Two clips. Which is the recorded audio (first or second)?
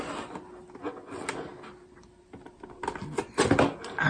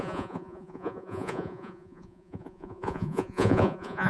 first